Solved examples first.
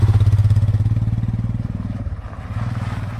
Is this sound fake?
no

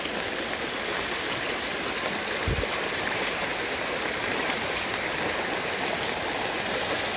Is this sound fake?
no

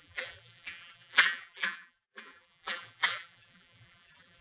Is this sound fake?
yes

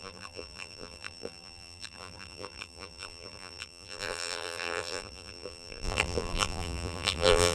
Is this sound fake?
yes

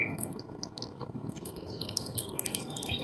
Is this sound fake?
yes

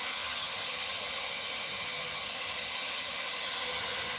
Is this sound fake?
yes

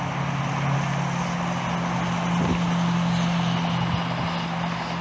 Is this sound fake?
no